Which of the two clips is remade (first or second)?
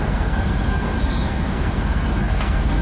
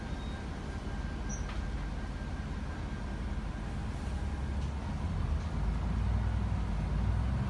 first